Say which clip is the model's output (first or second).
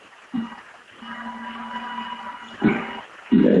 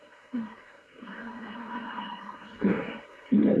second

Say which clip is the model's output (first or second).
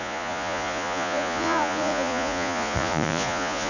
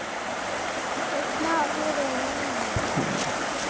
first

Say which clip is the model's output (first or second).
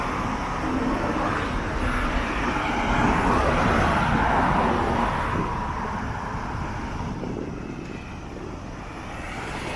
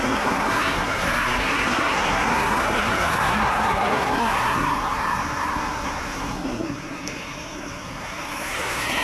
second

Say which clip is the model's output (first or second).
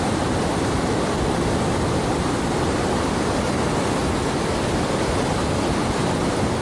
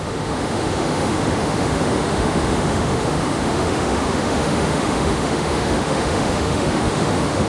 second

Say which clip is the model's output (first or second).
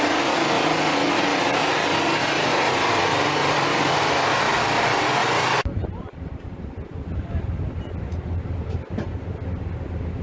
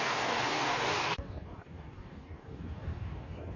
second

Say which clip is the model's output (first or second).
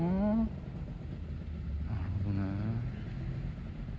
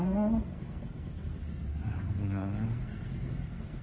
second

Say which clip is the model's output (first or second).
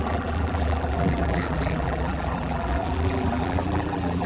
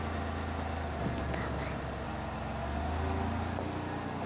first